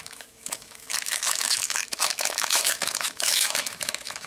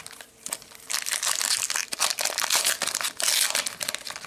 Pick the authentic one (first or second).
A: second